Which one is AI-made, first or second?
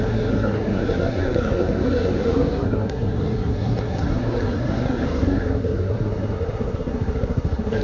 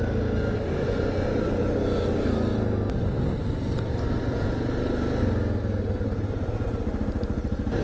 first